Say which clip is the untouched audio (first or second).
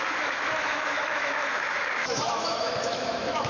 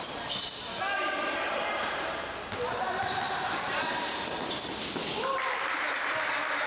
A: second